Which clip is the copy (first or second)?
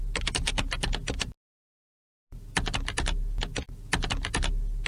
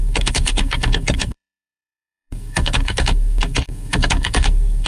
second